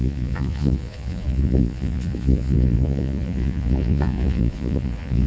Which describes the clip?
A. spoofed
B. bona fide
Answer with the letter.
A